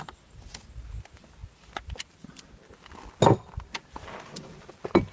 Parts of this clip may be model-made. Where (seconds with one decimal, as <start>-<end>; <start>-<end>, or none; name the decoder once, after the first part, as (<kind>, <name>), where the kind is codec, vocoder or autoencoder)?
none